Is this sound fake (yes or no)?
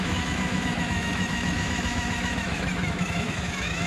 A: yes